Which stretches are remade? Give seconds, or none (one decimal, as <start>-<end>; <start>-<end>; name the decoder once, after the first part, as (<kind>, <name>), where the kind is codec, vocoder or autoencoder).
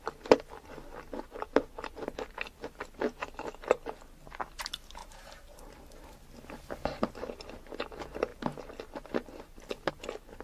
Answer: 5.0-6.0 (vocoder, BigVGAN v2)